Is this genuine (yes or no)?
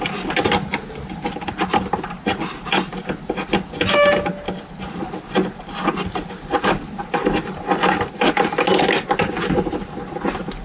yes